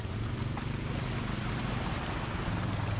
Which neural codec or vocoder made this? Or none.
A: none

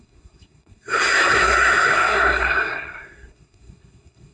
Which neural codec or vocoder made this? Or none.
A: codec, SNAC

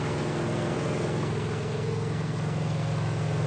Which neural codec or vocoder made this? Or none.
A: codec, SNAC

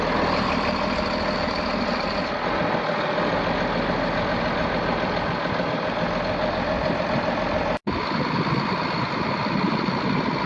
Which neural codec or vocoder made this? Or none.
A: none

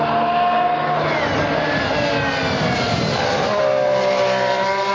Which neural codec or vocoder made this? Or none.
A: none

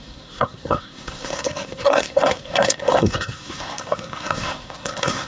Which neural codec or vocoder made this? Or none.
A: codec, SNAC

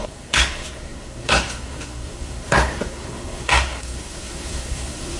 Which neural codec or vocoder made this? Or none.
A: codec, SNAC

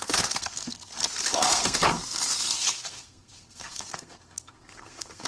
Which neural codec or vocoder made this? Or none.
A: codec, SNAC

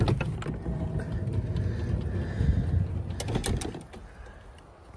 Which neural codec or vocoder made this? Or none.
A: none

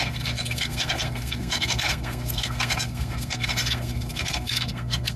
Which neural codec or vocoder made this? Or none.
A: codec, SNAC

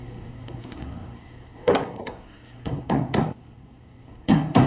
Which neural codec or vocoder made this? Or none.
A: codec, SNAC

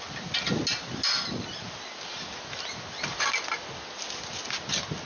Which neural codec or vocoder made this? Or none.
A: none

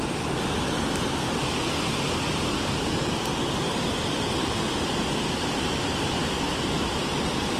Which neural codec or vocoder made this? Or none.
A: none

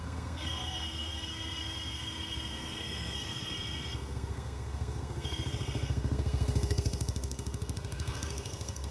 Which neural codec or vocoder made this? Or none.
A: codec, SNAC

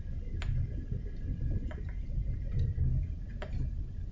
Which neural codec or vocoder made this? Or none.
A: none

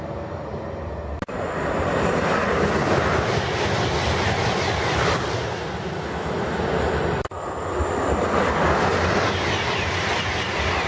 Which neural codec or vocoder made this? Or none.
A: none